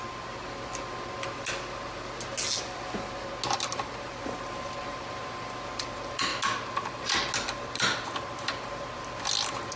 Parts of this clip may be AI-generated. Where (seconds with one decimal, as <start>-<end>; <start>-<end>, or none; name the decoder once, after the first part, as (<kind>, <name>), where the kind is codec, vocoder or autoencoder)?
none